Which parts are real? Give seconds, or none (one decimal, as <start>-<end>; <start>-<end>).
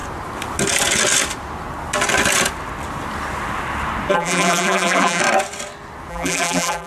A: 0.0-4.1; 5.2-6.1